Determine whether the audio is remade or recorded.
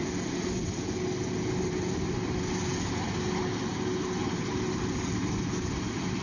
recorded